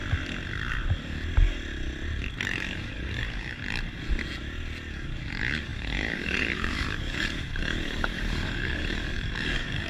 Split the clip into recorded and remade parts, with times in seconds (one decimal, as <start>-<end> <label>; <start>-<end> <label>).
0.0-2.4 recorded; 2.4-3.6 remade; 3.6-4.9 recorded; 4.9-9.9 remade